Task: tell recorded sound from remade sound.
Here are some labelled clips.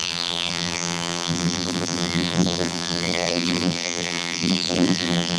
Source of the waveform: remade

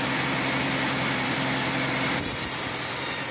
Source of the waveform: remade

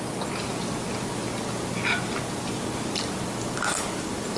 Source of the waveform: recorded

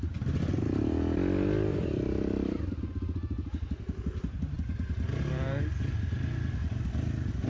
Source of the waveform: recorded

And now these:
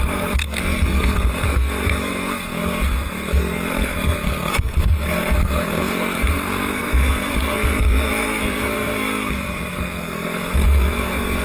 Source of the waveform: remade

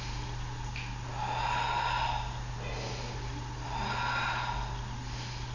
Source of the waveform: recorded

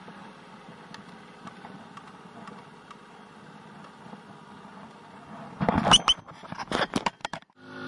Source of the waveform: recorded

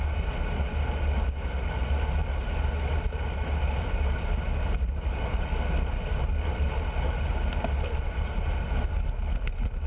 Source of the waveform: recorded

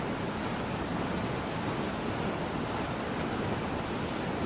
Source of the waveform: recorded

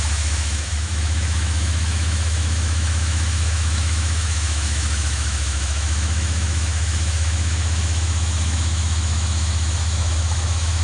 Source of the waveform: remade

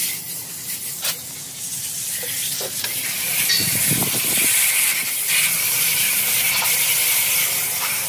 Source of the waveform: recorded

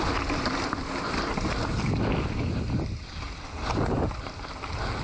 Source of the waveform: recorded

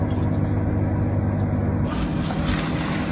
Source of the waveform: recorded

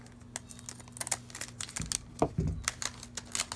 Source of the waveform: recorded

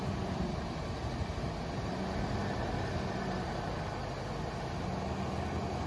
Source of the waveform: recorded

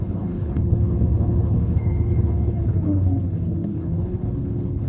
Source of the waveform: remade